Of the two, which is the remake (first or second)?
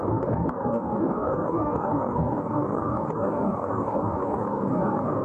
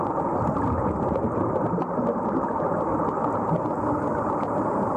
first